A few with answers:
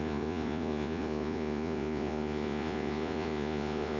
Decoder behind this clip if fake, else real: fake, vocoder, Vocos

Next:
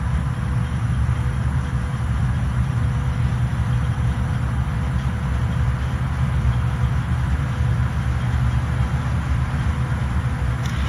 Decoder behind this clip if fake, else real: real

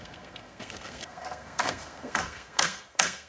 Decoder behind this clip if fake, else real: fake, codec, SNAC